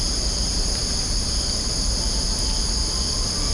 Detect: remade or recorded recorded